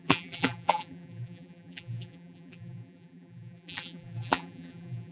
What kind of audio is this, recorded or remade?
remade